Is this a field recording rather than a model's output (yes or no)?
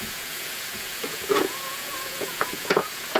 no